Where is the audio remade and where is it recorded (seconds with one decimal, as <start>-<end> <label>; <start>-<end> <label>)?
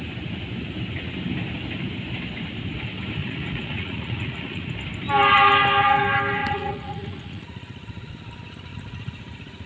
0.0-3.2 recorded; 3.2-4.7 remade; 4.7-6.4 recorded; 6.4-8.1 remade; 8.1-8.7 recorded; 8.7-9.7 remade